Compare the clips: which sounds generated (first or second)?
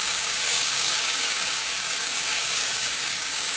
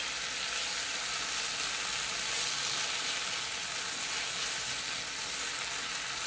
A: first